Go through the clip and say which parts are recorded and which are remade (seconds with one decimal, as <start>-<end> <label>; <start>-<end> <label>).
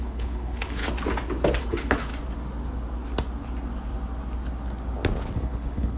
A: 0.0-0.8 remade; 0.8-1.6 recorded; 1.6-2.1 remade; 2.1-5.3 recorded; 5.3-6.0 remade